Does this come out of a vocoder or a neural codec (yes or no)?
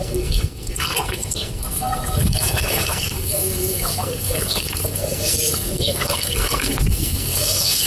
yes